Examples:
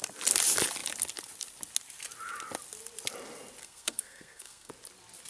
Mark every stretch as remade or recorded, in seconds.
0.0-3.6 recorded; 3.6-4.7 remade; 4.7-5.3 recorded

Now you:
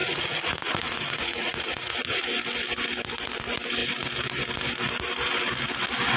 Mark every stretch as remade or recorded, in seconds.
0.0-2.2 remade; 2.2-6.2 recorded

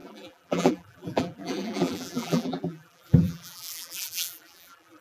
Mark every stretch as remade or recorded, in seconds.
0.0-5.0 remade

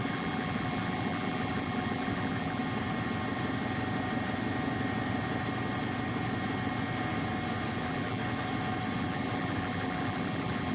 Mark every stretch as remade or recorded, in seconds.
0.0-2.6 remade; 2.6-7.8 recorded; 7.8-8.2 remade; 8.2-9.0 recorded; 9.0-10.7 remade

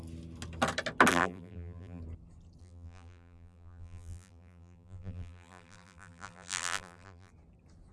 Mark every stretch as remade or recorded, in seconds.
0.0-1.1 recorded; 1.1-2.0 remade; 2.0-2.6 recorded; 2.6-7.3 remade; 7.3-7.9 recorded

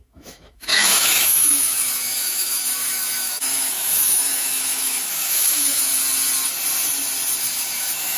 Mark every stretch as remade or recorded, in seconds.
0.0-5.9 remade; 5.9-7.4 recorded; 7.4-8.2 remade

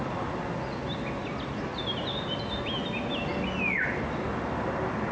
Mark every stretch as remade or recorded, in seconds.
0.0-5.1 recorded